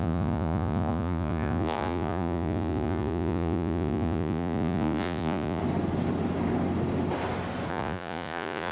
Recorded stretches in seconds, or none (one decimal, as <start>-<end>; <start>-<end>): 5.6-7.7